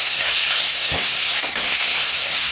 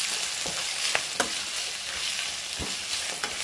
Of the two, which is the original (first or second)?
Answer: second